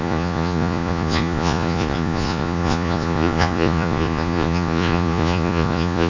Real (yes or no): no